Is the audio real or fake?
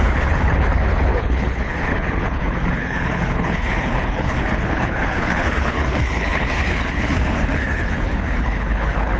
fake